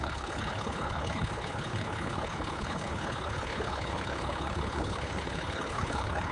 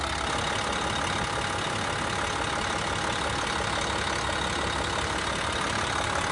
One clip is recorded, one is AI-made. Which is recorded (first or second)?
second